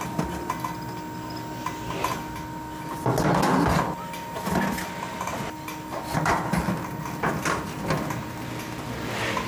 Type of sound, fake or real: real